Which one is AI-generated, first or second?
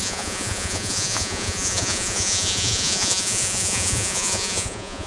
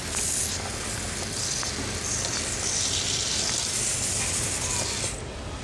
first